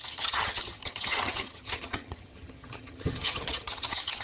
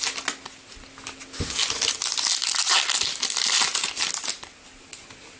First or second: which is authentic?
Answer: second